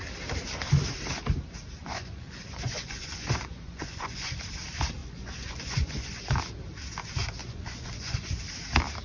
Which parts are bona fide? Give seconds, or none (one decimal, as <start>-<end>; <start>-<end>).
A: 0.0-1.8; 4.3-5.0; 6.2-7.4; 8.4-9.0